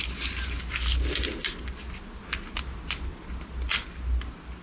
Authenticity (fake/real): real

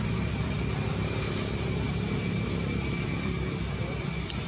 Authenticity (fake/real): real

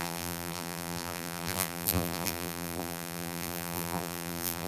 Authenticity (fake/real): fake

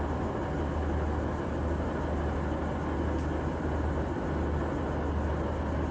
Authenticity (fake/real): real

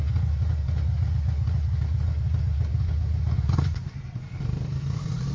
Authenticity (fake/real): real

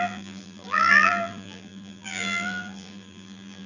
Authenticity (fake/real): fake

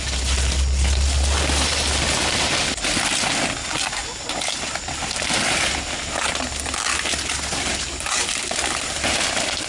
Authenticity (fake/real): real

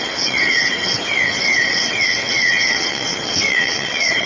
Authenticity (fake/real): fake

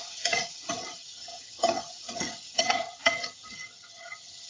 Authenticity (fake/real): fake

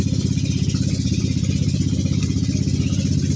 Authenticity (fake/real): real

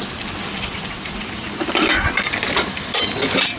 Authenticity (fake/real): real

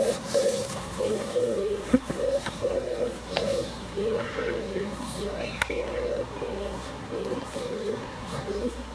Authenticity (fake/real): fake